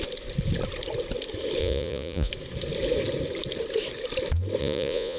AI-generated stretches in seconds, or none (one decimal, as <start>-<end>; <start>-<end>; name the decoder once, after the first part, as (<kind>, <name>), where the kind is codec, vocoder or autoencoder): 1.6-2.3 (vocoder, Vocos); 4.6-5.2